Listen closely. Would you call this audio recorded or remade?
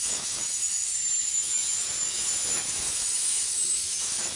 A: remade